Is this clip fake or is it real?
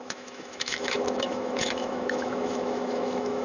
fake